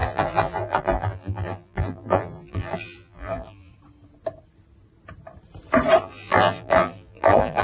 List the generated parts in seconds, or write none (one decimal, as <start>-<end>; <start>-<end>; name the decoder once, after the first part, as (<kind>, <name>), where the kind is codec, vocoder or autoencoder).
0.0-3.7 (vocoder, BigVGAN v2); 6.0-7.6